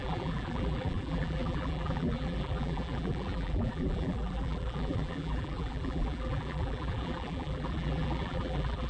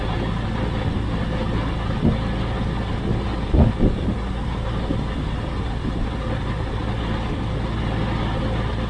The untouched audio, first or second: second